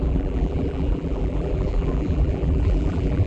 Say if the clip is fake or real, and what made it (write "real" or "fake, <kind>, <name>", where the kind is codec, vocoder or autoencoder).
fake, vocoder, BigVGAN v2